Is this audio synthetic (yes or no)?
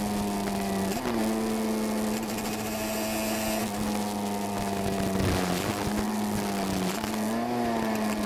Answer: no